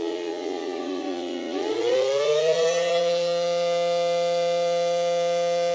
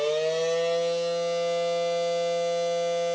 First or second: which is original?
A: second